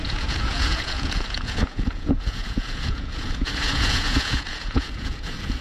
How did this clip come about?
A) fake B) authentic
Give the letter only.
A